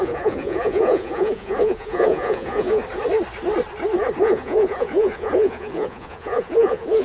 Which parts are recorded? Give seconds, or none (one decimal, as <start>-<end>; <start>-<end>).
2.8-4.2